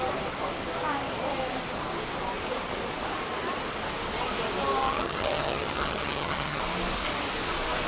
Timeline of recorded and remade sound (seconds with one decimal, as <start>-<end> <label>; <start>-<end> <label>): 0.0-4.8 recorded; 4.8-6.6 remade; 6.6-7.9 recorded